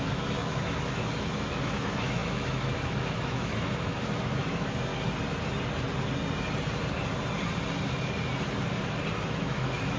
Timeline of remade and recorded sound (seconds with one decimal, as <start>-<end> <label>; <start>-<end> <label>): 0.0-4.9 remade; 4.9-9.3 recorded; 9.3-10.0 remade